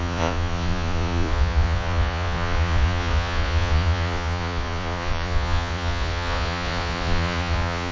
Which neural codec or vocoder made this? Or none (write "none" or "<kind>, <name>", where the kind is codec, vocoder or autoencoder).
vocoder, Vocos